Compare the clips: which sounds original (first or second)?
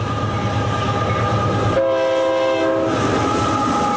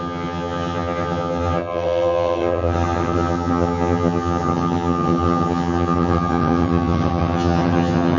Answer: first